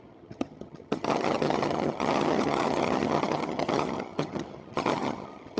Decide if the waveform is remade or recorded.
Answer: remade